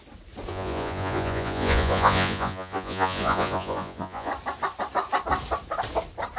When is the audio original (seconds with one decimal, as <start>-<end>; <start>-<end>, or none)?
0.0-0.5; 4.3-6.4